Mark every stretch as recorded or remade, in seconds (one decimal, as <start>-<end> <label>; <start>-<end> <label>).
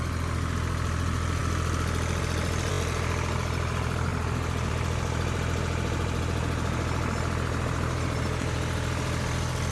0.0-4.1 recorded; 4.1-4.7 remade; 4.7-9.7 recorded